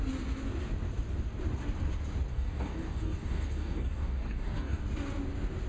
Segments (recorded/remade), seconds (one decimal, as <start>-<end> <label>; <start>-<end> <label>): 0.0-2.3 recorded; 2.3-4.8 remade; 4.8-5.7 recorded